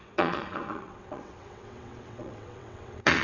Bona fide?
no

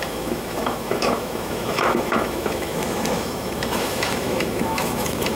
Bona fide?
no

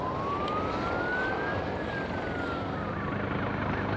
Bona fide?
yes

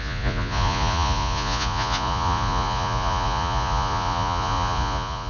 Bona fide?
no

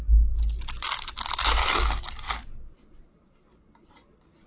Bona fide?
yes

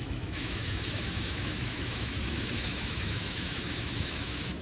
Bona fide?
no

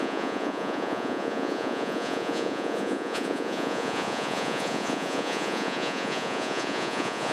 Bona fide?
no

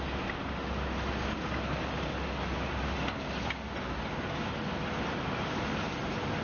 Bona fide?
yes